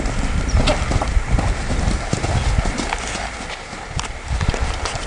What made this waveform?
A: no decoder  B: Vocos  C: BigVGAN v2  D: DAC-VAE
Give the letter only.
A